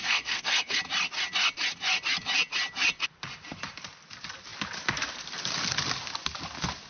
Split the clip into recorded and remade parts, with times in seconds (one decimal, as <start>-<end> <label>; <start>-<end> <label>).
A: 0.0-0.8 remade; 0.8-6.9 recorded

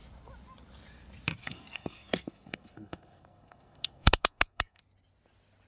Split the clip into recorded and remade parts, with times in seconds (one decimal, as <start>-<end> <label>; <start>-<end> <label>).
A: 0.0-1.4 recorded; 1.4-4.8 remade; 4.8-5.7 recorded

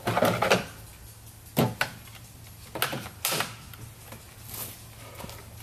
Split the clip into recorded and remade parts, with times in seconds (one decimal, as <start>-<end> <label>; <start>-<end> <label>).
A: 0.0-5.6 recorded

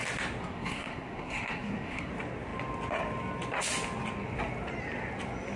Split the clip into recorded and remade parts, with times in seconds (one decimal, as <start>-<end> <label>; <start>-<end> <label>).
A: 0.0-0.4 recorded; 0.4-2.1 remade; 2.1-5.6 recorded

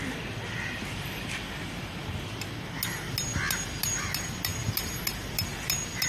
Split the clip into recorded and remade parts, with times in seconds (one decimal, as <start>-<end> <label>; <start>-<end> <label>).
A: 0.0-6.1 recorded

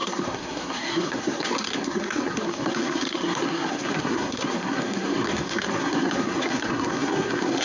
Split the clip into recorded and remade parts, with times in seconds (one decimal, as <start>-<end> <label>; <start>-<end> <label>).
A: 0.0-7.6 remade

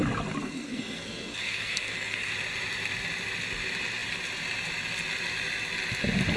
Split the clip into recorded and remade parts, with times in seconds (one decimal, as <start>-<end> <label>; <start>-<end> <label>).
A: 0.0-0.4 recorded; 0.4-2.3 remade; 2.3-6.4 recorded